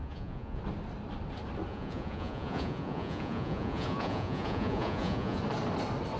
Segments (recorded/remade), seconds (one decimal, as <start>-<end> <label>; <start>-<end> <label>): 0.0-0.6 remade; 0.6-1.7 recorded; 1.7-5.4 remade; 5.4-6.2 recorded